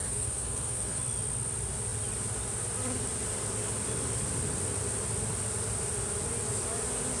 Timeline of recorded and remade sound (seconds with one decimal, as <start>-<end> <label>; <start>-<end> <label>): 0.0-1.0 remade; 1.0-7.2 recorded